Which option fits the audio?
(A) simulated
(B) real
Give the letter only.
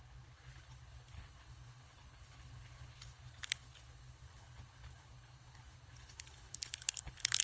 A